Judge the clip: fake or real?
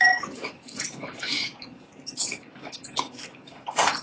fake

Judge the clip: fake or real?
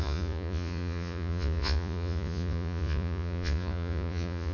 fake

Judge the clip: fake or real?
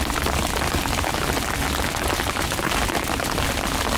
real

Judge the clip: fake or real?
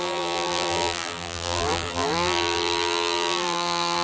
fake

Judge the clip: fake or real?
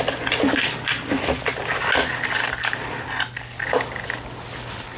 real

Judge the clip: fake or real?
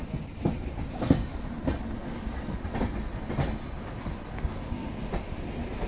real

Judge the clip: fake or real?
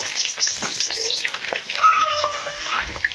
fake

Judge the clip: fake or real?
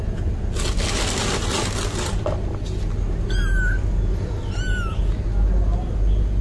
real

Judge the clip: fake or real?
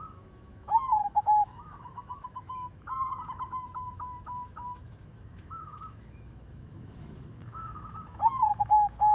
fake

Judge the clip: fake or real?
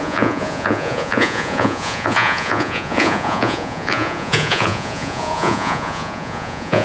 fake